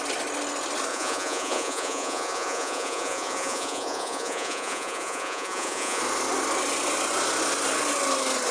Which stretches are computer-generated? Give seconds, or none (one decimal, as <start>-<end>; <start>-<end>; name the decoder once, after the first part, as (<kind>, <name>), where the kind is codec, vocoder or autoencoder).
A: 0.9-6.0 (vocoder, Vocos)

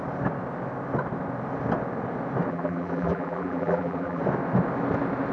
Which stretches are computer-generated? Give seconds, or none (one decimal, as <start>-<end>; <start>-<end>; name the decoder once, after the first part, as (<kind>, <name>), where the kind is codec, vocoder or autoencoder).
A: 2.5-4.2 (vocoder, BigVGAN v2)

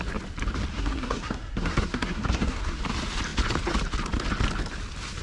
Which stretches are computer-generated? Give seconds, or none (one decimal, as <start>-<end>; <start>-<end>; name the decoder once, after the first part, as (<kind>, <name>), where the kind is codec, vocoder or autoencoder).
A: 0.7-2.8 (codec, SNAC)

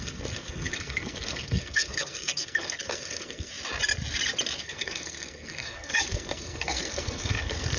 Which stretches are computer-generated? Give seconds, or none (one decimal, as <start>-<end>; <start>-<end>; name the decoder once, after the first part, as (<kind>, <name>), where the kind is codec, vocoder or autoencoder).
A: 0.0-3.5 (codec, SNAC); 4.6-7.8

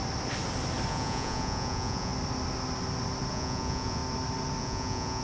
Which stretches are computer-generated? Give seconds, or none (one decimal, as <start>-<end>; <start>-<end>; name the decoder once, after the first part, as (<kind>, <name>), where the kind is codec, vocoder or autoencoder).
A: 0.9-2.1 (vocoder, Vocos); 3.3-4.0; 4.6-5.2

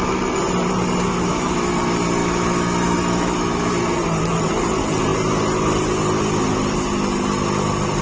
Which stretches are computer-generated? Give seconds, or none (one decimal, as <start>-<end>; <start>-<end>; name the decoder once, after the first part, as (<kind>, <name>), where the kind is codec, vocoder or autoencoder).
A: 1.1-1.7 (autoencoder, DAC-VAE); 2.2-3.7